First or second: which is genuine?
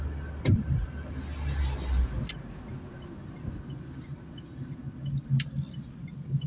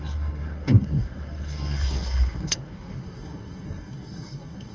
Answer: first